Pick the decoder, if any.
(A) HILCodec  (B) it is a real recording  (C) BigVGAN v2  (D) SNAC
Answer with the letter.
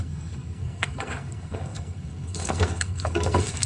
D